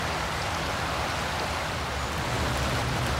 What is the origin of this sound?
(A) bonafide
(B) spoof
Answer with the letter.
A